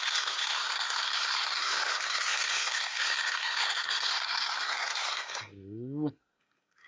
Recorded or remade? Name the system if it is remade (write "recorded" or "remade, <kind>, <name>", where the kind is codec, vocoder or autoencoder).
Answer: remade, codec, SNAC